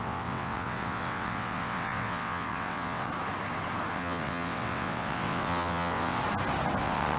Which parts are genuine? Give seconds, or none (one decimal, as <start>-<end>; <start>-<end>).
3.1-3.9; 6.2-6.8